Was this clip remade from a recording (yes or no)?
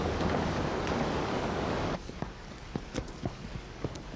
yes